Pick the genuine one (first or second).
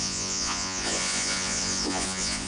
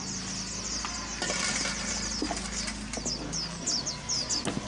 second